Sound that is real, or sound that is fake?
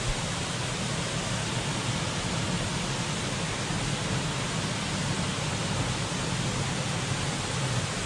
real